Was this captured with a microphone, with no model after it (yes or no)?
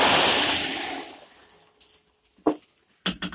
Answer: yes